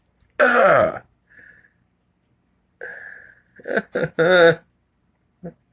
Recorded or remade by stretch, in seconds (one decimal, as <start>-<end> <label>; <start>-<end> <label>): 0.0-5.7 recorded